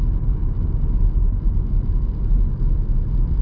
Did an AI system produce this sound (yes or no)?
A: no